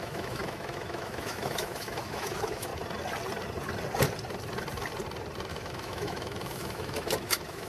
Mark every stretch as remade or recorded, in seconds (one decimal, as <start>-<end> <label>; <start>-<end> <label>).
0.0-2.7 remade; 2.7-5.5 recorded; 5.5-7.7 remade